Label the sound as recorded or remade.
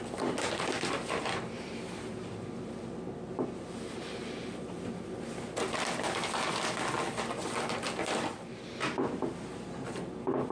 recorded